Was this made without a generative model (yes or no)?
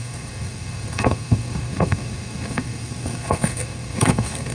no